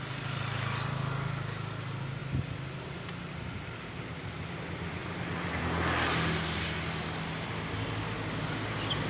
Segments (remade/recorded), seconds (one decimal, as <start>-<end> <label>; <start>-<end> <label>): 0.0-5.0 recorded; 5.0-5.6 remade; 5.6-9.1 recorded